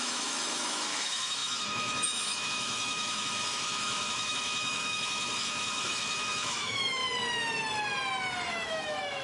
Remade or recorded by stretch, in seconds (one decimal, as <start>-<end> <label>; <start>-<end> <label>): 0.0-7.0 remade; 7.0-8.5 recorded; 8.5-9.2 remade